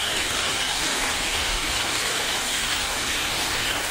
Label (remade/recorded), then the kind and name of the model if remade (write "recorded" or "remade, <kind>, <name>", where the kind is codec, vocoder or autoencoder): remade, codec, DAC